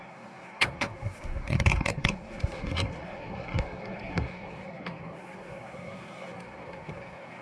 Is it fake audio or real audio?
fake